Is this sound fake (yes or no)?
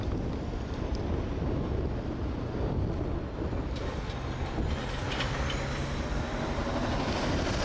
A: no